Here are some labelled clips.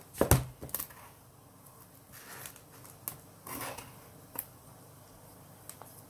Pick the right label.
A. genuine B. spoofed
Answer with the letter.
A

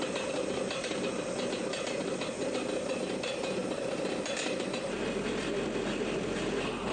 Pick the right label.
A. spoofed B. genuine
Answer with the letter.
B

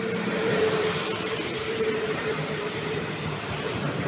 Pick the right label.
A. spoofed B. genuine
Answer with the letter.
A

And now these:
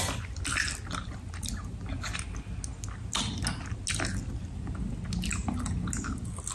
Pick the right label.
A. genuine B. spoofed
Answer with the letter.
A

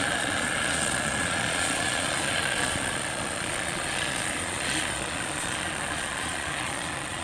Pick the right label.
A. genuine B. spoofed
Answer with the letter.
B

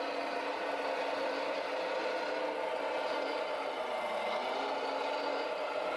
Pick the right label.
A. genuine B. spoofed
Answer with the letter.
A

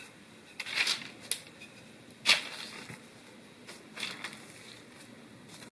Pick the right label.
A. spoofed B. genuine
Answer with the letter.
B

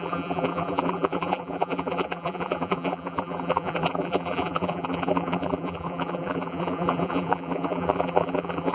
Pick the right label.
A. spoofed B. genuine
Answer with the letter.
A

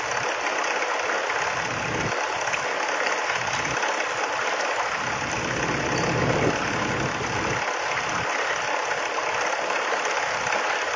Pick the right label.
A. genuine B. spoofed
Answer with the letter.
A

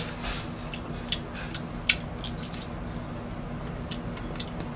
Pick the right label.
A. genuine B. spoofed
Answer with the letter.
A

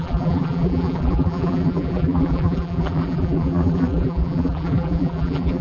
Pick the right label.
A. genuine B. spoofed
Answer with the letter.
B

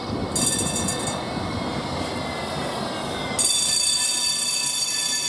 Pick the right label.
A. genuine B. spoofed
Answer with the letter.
A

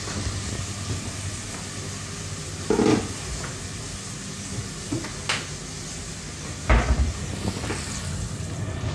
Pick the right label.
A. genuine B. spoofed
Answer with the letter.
A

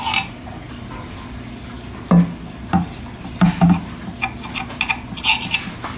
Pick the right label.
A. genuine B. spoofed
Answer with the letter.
A